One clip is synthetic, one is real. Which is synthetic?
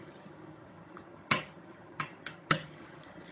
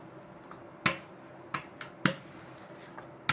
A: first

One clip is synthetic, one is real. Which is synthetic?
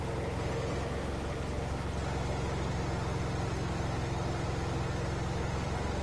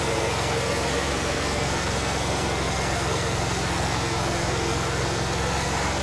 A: second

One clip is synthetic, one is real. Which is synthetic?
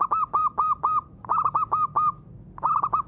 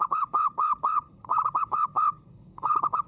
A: second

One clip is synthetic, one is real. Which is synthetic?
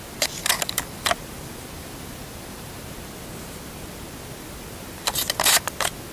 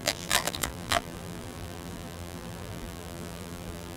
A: second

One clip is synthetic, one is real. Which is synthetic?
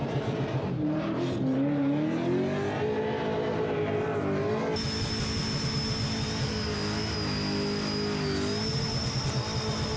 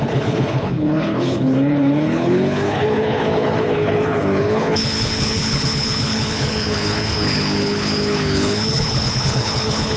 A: second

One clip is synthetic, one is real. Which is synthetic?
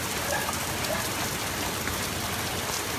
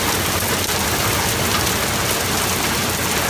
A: first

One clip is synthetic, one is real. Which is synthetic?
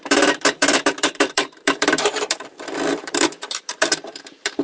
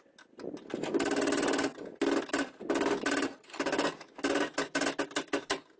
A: first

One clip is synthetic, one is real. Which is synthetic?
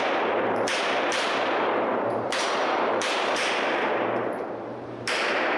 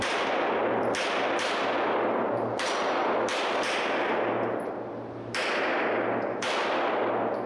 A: first